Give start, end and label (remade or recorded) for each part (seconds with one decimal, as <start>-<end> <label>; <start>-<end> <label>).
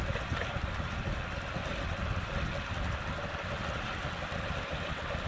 0.0-5.3 recorded